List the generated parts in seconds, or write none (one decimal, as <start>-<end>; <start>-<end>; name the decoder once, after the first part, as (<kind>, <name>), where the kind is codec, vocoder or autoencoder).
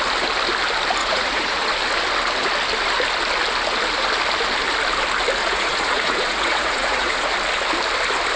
1.0-1.7 (vocoder, Vocos); 5.4-7.3